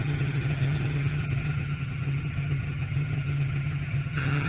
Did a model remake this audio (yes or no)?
yes